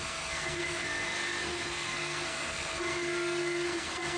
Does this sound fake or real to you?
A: fake